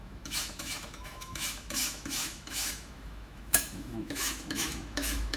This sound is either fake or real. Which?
fake